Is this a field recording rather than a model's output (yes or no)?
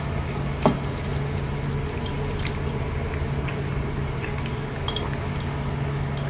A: yes